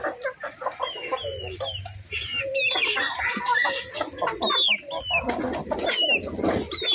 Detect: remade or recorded recorded